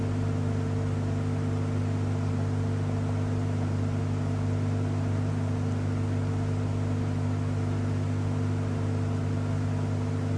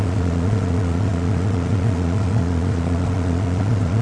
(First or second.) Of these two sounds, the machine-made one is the second